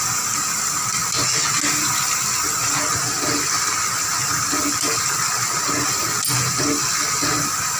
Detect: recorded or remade recorded